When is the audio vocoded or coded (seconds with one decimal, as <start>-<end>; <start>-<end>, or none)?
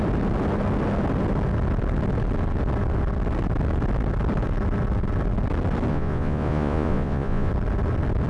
5.9-7.5